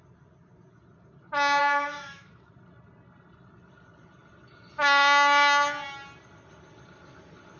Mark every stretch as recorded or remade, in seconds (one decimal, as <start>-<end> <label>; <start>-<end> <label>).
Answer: 0.0-1.6 recorded; 1.6-2.5 remade; 2.5-7.6 recorded